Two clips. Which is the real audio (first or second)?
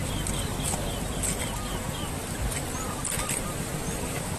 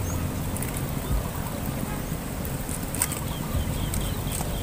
first